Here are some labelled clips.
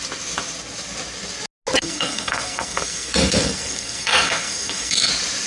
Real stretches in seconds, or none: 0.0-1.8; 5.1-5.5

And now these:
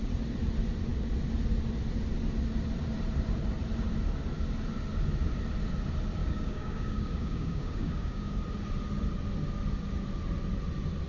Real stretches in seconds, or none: 0.0-6.2; 8.4-11.1

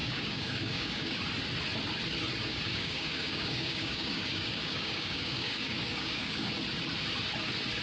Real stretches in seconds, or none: 1.2-2.5; 6.5-7.8

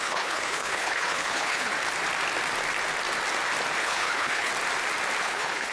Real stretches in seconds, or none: 1.7-3.8; 4.5-5.2

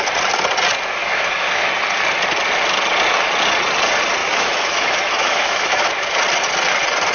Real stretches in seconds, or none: 0.0-1.0; 1.7-4.2; 6.2-7.1